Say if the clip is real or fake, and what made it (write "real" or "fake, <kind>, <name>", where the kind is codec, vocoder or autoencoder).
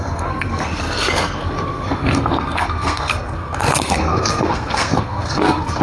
fake, codec, SNAC